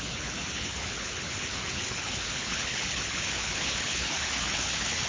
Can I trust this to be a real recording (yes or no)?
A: no